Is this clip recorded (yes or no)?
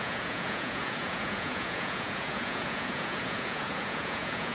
no